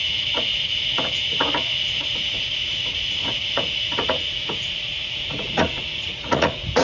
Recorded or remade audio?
remade